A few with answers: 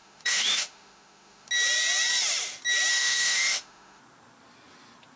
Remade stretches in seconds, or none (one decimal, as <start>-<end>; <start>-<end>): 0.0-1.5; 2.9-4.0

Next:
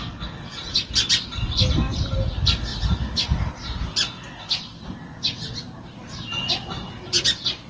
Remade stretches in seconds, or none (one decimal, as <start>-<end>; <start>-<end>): none

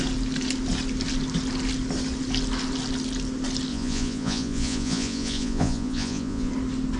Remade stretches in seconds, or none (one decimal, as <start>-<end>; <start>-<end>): 3.7-6.5

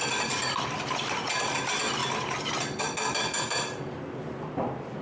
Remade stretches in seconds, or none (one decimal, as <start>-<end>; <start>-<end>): none

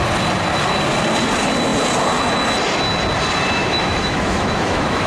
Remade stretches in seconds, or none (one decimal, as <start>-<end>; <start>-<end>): 3.6-5.1